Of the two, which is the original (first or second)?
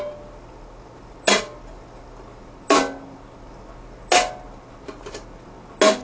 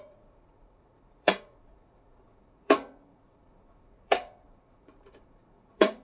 first